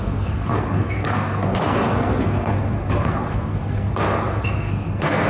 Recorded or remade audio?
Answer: remade